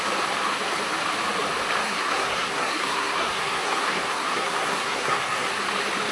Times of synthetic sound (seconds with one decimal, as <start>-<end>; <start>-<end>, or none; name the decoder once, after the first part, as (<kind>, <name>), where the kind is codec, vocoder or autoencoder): 1.8-5.5 (codec, SNAC)